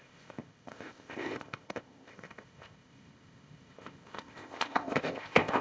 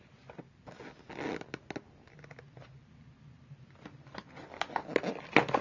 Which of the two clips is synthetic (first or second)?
first